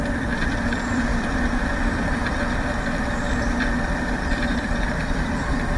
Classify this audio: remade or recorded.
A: remade